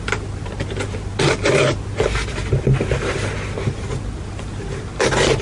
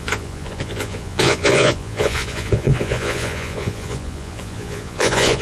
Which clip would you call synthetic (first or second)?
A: second